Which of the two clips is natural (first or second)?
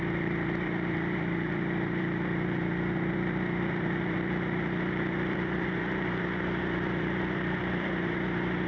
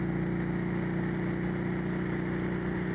second